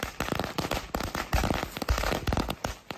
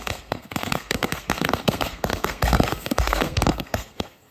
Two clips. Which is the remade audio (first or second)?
second